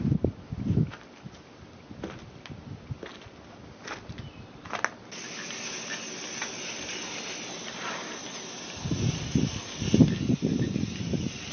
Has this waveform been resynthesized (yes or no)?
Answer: no